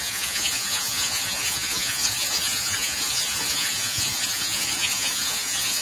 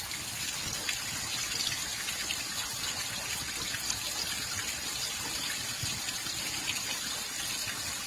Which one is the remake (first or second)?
first